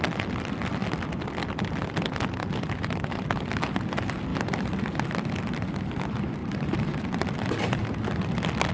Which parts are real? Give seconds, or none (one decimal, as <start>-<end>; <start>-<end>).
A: 0.0-2.4; 3.2-6.4; 7.2-8.7